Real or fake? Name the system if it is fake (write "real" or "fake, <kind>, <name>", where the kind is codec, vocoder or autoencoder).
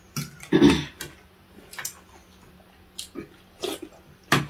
real